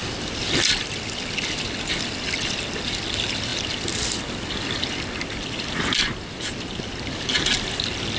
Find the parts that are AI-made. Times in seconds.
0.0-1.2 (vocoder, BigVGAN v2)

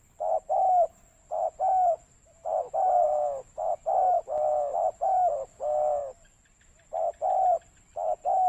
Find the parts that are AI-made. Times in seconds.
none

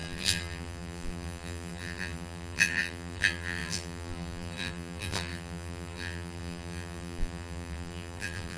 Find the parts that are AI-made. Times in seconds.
0.0-8.6 (vocoder, BigVGAN v2)

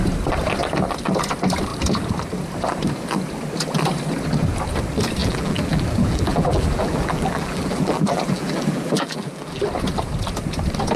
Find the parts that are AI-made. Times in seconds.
5.2-9.6 (vocoder, BigVGAN v2)

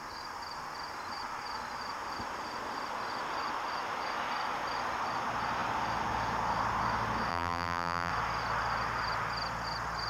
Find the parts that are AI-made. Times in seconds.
7.3-8.1 (vocoder, BigVGAN v2)

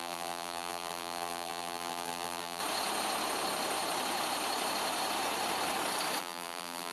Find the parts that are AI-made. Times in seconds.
0.0-2.6 (vocoder, BigVGAN v2); 6.2-6.9

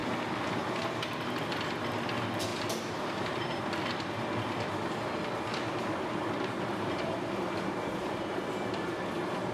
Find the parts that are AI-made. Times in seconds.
2.5-3.6 (vocoder, BigVGAN v2); 5.5-8.4